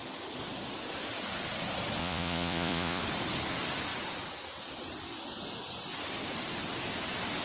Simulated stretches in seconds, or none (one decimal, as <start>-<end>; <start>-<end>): 2.0-3.0